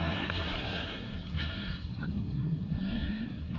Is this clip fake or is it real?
fake